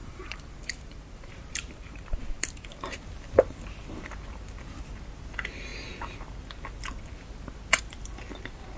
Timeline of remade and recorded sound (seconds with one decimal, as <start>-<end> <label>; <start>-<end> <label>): 0.0-3.0 remade; 3.0-8.8 recorded